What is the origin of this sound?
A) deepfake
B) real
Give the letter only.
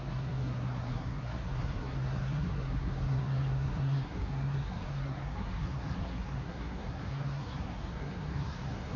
A